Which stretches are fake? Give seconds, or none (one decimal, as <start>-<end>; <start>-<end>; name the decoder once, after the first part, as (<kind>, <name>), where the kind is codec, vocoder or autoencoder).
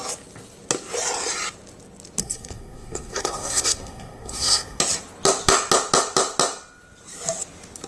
2.2-4.8 (codec, SNAC)